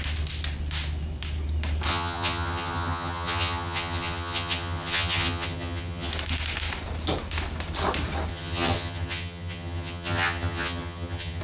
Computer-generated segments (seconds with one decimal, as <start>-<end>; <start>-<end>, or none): 1.9-6.1; 8.3-11.4